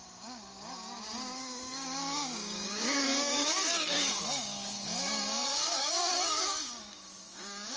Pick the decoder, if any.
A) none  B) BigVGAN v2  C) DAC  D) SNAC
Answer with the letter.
C